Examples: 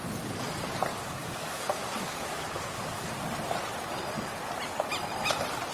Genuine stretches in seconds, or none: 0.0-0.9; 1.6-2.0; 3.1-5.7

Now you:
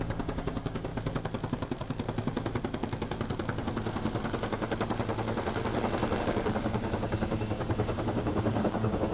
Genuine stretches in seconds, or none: 0.9-6.2

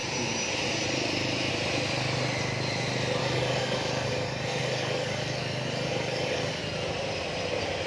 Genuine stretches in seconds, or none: 0.0-3.2; 6.6-7.9

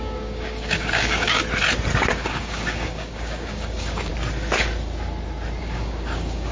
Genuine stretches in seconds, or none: 1.4-2.1; 4.1-5.6